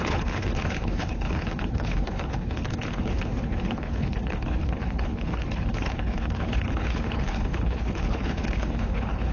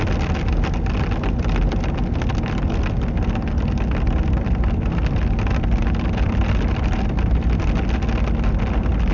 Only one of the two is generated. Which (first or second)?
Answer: first